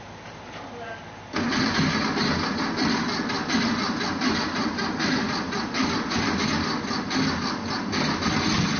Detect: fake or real real